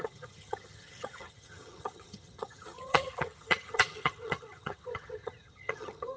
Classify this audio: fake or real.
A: fake